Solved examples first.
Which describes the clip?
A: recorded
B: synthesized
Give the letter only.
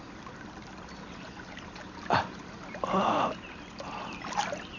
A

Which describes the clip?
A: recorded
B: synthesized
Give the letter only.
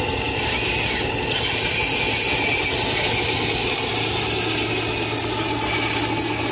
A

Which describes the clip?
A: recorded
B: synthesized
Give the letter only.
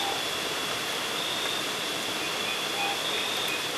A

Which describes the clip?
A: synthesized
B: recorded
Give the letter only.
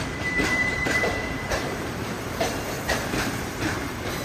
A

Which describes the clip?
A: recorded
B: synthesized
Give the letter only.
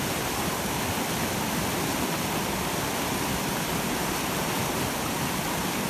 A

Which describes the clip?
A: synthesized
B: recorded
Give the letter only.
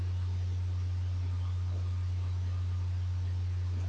B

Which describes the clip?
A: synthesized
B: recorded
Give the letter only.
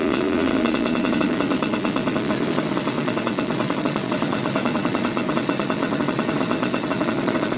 A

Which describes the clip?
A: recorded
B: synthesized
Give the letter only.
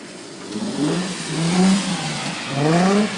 B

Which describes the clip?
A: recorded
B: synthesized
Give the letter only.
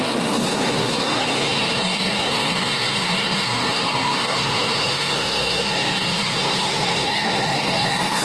B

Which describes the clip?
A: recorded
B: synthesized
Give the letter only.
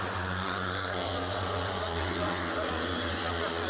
B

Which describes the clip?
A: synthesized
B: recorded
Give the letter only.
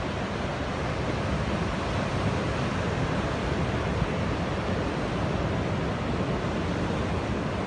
B